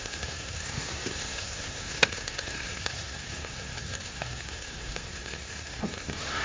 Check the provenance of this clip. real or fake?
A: fake